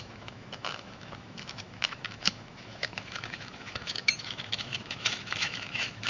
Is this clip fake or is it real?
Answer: fake